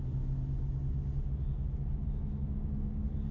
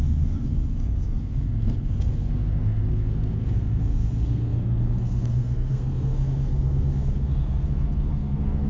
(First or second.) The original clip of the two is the first